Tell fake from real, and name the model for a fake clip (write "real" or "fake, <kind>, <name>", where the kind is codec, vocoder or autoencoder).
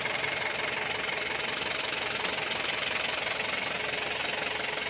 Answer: real